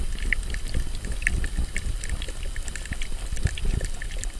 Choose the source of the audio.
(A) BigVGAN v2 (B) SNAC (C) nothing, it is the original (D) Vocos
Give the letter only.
C